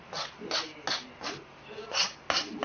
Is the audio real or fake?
real